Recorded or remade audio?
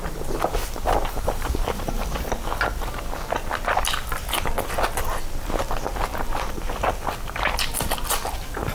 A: recorded